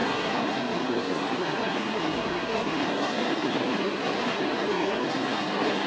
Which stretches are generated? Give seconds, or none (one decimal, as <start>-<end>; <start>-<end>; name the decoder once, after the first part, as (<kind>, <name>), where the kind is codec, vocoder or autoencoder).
0.0-5.9 (codec, SNAC)